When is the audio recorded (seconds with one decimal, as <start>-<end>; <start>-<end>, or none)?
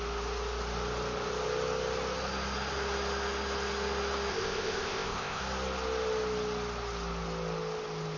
0.0-4.3; 5.4-8.2